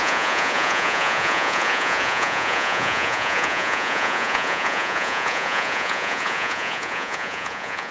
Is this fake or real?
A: fake